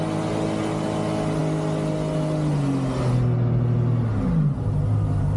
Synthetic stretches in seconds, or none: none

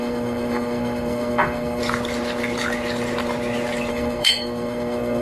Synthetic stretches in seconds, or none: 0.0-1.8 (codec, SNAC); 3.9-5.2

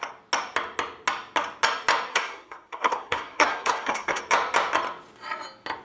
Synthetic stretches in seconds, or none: 2.1-4.2 (codec, SNAC)

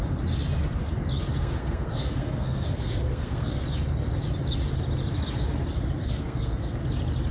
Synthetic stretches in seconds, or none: 1.4-3.6 (codec, SNAC); 6.0-6.8

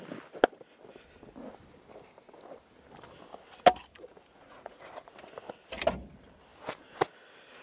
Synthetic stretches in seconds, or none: 3.9-5.1 (vocoder, Vocos)

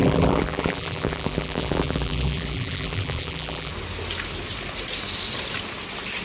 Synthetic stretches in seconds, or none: 0.0-3.7 (vocoder, BigVGAN v2)

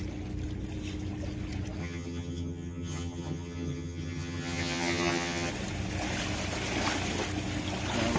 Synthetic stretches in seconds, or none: 1.8-5.5 (vocoder, HiFi-GAN)